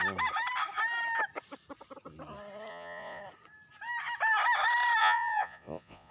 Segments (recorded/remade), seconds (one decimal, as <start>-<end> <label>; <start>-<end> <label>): 0.0-2.7 recorded; 2.7-3.2 remade; 3.2-5.0 recorded; 5.0-6.1 remade